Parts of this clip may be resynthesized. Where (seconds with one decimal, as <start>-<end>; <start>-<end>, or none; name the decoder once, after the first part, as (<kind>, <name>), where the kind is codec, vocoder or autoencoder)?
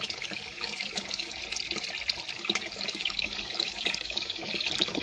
0.0-1.4 (codec, DAC); 2.3-5.0